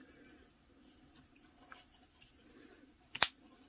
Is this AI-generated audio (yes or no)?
no